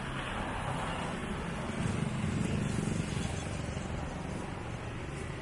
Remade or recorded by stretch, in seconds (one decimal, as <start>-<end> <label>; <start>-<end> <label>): 0.0-5.4 recorded